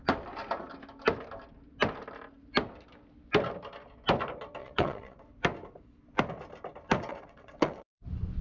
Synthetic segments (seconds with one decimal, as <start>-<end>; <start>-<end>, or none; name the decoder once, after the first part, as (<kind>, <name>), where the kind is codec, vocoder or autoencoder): 4.6-5.2 (vocoder, WaveNeXt); 7.1-8.0